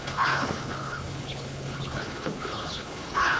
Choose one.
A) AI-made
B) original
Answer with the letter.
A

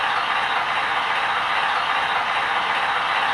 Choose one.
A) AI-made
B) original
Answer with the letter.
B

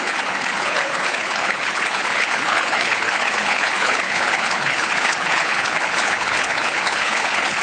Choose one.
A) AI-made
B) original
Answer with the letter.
A